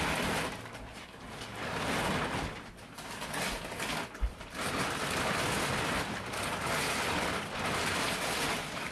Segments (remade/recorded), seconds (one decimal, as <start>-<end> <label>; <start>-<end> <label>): 0.0-8.9 recorded